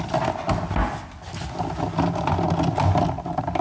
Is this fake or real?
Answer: real